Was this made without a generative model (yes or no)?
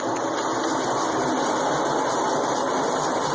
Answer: yes